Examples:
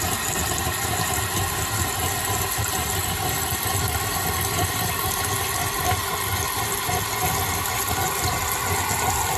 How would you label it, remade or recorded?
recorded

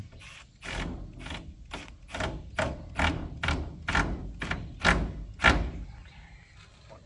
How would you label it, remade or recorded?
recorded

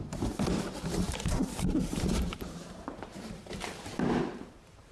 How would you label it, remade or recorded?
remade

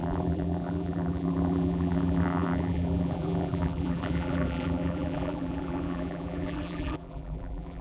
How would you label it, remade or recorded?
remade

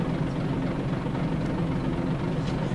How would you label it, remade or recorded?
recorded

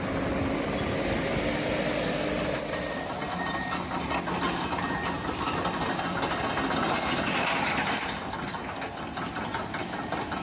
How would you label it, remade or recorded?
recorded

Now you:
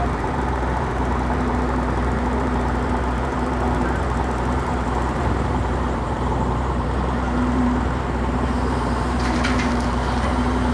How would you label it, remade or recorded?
remade